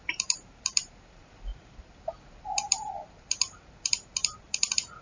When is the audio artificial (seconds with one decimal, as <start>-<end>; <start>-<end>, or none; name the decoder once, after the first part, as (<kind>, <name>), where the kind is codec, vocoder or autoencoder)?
0.0-5.0 (vocoder, BigVGAN v2)